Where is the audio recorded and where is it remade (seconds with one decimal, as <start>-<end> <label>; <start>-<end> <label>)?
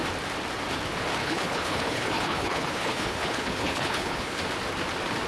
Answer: 0.0-1.2 recorded; 1.2-4.4 remade; 4.4-5.3 recorded